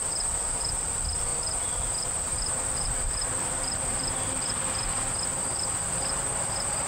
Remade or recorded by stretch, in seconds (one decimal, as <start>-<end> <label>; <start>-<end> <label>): 0.0-6.9 remade